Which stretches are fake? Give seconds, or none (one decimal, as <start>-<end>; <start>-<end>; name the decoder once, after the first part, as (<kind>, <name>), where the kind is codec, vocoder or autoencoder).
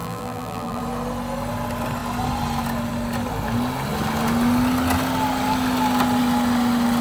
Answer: 0.0-0.8 (vocoder, BigVGAN v2)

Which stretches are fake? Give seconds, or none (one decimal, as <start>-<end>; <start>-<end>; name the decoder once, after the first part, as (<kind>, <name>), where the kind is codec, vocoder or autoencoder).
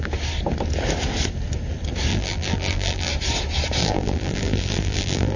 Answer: 2.1-3.1 (vocoder, BigVGAN v2); 3.8-5.4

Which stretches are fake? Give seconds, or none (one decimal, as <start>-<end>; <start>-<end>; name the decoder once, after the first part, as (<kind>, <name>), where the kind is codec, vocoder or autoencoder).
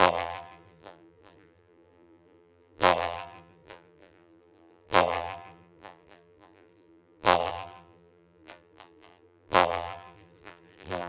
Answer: 0.0-11.1 (vocoder, BigVGAN v2)